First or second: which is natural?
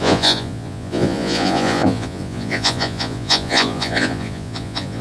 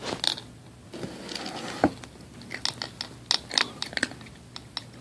second